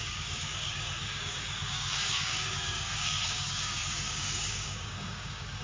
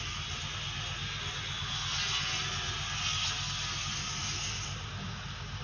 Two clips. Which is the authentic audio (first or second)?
second